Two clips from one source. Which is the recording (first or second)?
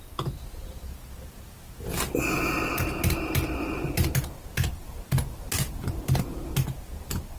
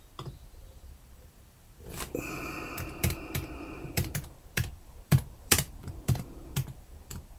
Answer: first